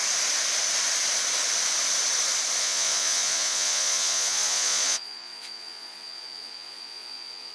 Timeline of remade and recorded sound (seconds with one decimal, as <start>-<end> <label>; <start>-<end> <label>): 0.0-2.6 recorded; 2.6-7.5 remade